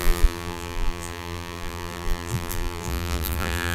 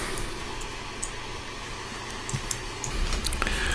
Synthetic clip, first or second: first